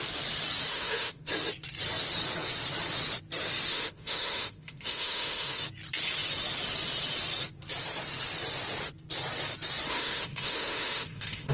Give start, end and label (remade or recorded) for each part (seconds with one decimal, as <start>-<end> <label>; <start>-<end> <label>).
0.0-0.7 recorded; 0.7-1.3 remade; 1.3-3.7 recorded; 3.7-5.6 remade; 5.6-9.9 recorded; 9.9-11.5 remade